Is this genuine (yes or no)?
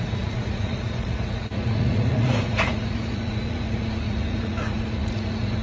no